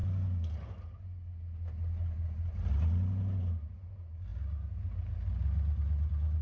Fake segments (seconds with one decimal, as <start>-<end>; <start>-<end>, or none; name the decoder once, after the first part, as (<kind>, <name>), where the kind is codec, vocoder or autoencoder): none